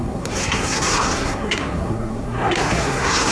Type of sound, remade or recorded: remade